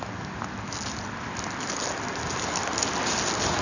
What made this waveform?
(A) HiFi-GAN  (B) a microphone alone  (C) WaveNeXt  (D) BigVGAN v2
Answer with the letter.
B